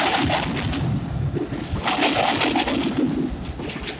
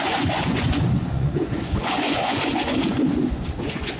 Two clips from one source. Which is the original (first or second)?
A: first